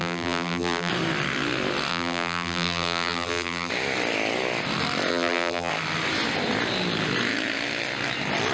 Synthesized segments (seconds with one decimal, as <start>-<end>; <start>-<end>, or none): 0.0-0.9; 1.9-3.7; 5.1-5.7